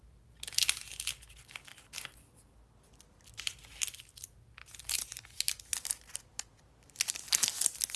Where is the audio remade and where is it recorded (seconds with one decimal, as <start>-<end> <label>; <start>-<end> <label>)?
0.0-8.0 recorded